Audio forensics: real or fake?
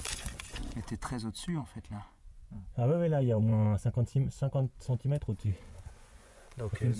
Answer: fake